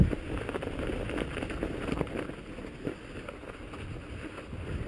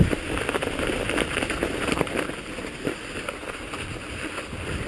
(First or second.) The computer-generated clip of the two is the second